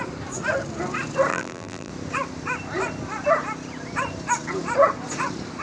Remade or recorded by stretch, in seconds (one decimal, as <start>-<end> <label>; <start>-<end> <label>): 0.0-1.3 recorded; 1.3-1.9 remade; 1.9-5.6 recorded